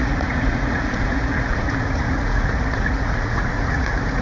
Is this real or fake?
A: fake